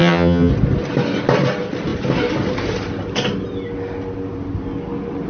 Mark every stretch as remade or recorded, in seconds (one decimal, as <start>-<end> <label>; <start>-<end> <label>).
0.0-0.5 remade; 0.5-5.3 recorded